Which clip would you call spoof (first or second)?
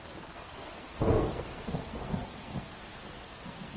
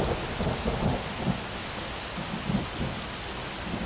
first